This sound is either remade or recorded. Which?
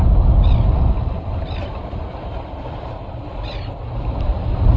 recorded